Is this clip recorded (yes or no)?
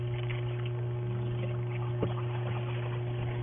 yes